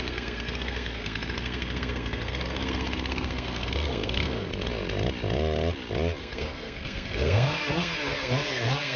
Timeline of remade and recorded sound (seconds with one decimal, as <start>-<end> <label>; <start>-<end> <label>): 0.0-4.5 remade; 4.5-6.2 recorded; 6.2-9.0 remade